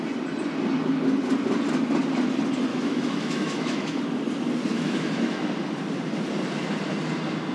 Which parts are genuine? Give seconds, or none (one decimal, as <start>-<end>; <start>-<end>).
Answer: 0.0-2.7; 4.0-4.7; 5.4-7.5